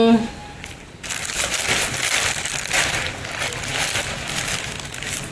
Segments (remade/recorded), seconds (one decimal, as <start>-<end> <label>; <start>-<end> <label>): 0.0-0.4 recorded; 0.4-3.6 remade; 3.6-5.3 recorded